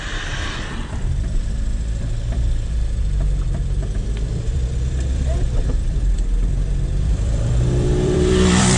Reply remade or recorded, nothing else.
remade